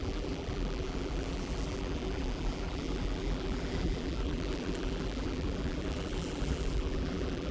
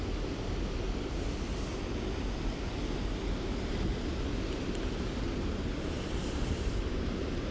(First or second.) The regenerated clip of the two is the first